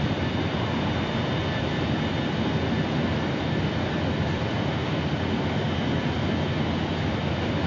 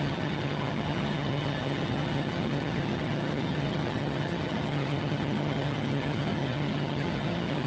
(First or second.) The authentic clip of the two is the first